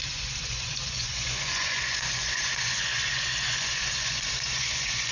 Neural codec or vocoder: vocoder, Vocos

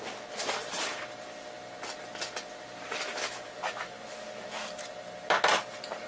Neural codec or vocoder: none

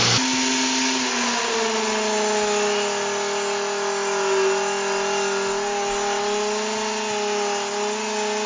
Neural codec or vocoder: none